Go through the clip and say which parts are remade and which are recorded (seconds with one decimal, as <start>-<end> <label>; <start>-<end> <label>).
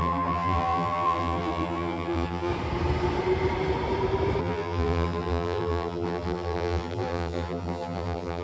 0.0-2.5 remade; 2.5-4.4 recorded; 4.4-8.4 remade